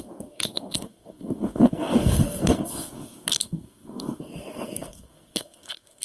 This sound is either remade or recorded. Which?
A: remade